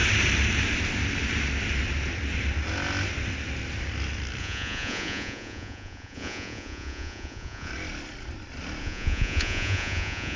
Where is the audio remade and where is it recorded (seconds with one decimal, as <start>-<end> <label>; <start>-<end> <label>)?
0.0-4.4 recorded; 4.4-7.7 remade; 7.7-8.8 recorded; 8.8-10.4 remade